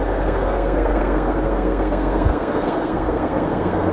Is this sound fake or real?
fake